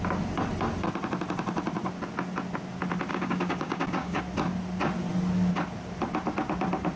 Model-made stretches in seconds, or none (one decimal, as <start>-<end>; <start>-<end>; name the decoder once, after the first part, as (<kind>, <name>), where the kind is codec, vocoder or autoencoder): 3.1-4.2 (codec, DAC)